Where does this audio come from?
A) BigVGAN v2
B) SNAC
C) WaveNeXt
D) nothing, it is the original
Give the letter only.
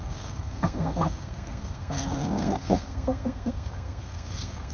B